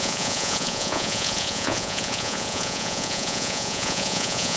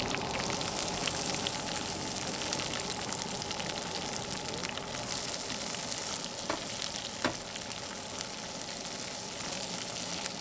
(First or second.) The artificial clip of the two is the first